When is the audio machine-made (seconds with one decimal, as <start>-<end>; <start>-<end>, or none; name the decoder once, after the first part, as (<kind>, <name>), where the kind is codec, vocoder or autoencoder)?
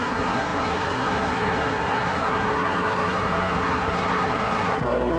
0.0-5.2 (codec, SNAC)